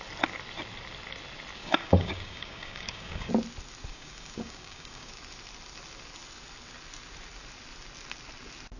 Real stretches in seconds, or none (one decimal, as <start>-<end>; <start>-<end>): 0.0-1.6; 3.3-3.9; 5.1-8.8